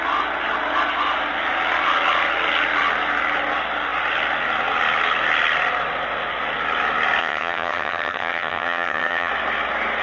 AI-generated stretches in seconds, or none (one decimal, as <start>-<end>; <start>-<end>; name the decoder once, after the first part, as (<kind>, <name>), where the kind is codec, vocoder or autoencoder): 7.2-9.3 (vocoder, HiFi-GAN)